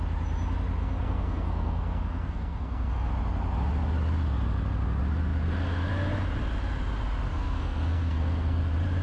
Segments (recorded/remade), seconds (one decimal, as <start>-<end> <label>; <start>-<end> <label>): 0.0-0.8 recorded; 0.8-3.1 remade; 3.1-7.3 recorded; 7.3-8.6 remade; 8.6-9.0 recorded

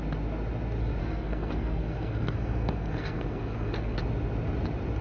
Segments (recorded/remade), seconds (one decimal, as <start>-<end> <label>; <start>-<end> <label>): 0.0-1.0 recorded; 1.0-4.0 remade; 4.0-5.0 recorded

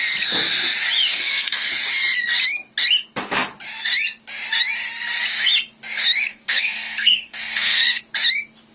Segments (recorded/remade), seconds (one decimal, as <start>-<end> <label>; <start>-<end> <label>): 0.0-1.1 recorded; 1.1-1.7 remade; 1.7-6.3 recorded; 6.3-8.0 remade; 8.0-8.7 recorded

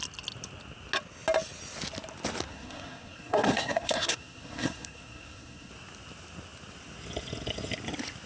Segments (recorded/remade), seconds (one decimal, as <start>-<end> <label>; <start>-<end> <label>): 0.0-2.5 recorded; 2.5-5.7 remade; 5.7-8.3 recorded